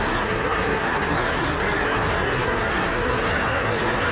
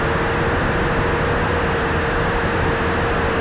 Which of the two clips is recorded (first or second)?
second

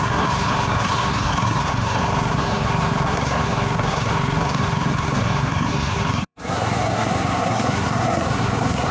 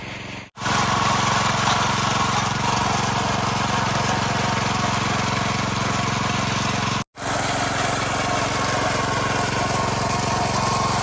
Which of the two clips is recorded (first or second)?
second